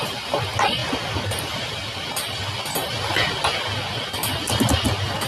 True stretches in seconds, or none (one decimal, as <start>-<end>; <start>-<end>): 0.0-5.3